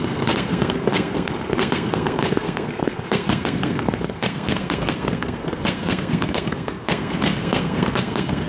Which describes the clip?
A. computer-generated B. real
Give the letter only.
A